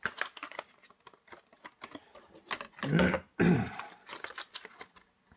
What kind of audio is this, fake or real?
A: real